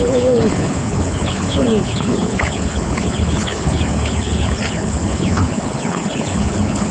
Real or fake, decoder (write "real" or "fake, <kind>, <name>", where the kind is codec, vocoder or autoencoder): fake, codec, HILCodec